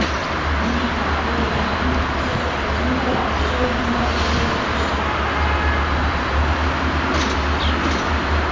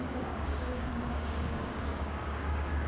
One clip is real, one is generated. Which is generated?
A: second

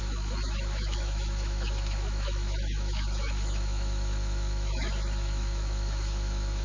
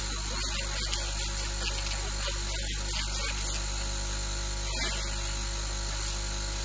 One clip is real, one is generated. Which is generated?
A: first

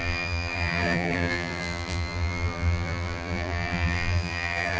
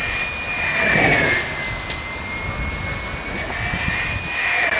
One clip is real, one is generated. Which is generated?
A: first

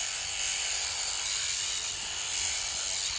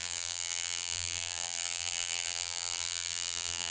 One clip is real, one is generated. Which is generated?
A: second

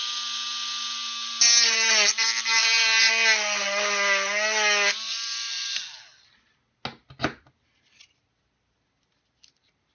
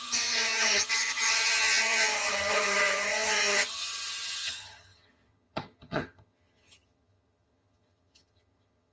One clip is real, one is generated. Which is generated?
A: second